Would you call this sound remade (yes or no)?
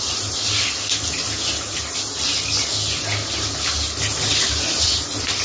no